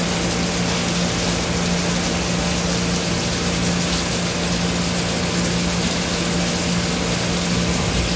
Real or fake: real